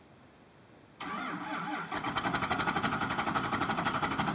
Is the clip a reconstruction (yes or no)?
no